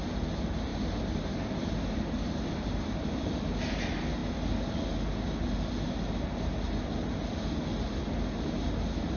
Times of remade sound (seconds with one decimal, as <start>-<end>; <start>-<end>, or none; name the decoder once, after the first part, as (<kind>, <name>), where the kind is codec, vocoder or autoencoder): 0.7-3.1 (vocoder, BigVGAN v2)